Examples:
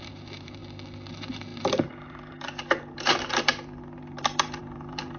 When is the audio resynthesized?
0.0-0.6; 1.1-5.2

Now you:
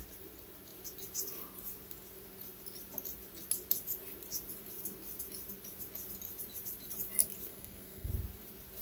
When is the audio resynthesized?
7.5-8.1